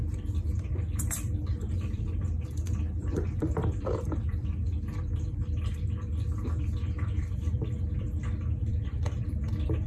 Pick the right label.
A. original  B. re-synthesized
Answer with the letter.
B